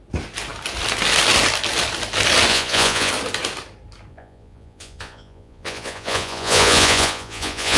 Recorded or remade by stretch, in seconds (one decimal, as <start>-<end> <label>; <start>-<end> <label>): 0.0-2.5 recorded; 2.5-3.1 remade; 3.1-4.1 recorded; 4.1-7.8 remade